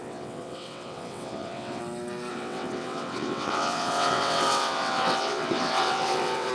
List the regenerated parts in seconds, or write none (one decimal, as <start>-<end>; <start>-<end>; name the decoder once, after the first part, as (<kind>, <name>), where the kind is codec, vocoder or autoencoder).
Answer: 0.0-1.8 (vocoder, WaveNeXt); 2.3-6.5